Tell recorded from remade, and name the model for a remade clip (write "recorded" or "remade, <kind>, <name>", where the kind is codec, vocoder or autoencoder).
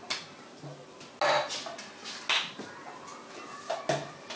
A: recorded